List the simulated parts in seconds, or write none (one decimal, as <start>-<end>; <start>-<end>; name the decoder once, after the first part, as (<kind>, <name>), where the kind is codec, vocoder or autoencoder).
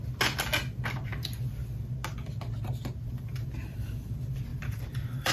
4.5-5.3 (vocoder, BigVGAN v2)